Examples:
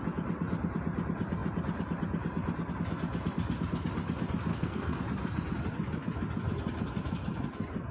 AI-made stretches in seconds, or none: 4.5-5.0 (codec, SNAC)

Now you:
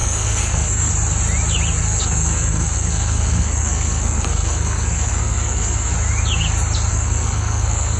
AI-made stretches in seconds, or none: 0.0-0.9 (codec, SNAC); 1.8-5.9; 6.9-8.0

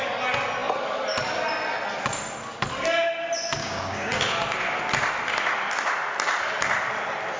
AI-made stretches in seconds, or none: 3.6-4.1 (codec, DAC)